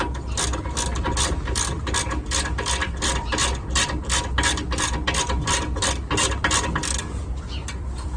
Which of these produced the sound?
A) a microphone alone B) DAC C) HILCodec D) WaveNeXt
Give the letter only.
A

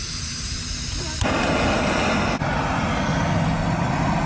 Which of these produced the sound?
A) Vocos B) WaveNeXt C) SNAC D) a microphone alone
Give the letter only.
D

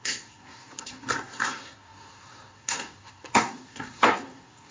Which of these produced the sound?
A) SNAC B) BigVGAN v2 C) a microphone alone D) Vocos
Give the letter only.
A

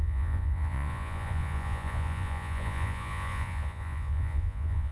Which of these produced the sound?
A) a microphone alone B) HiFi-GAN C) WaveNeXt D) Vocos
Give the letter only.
D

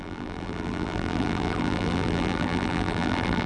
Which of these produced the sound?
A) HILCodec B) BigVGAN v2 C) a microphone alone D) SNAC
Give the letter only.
B